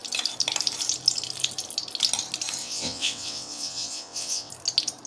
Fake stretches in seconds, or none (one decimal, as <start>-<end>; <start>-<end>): 2.6-4.5